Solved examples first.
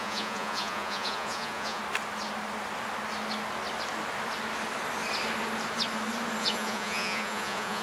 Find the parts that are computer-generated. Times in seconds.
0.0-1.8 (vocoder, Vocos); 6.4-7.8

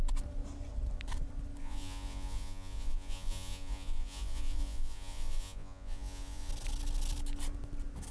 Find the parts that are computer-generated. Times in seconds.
1.6-6.5 (vocoder, Vocos)

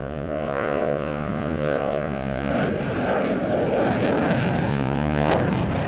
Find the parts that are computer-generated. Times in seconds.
0.0-2.5 (vocoder, Vocos); 4.7-5.3

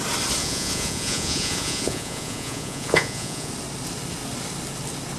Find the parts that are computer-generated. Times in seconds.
0.4-3.5 (vocoder, Vocos)

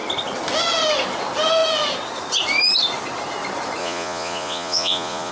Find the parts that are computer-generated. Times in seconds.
3.8-5.3 (vocoder, Vocos)